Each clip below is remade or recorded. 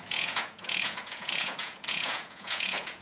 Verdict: remade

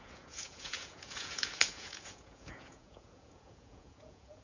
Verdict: remade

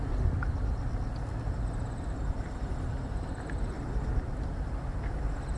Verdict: recorded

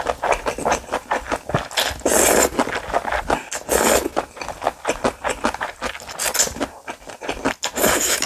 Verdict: recorded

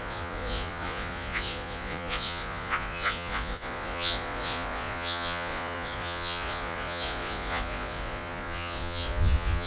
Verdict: remade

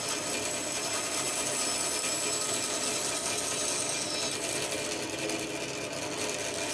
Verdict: recorded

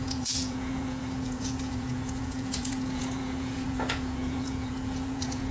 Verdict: remade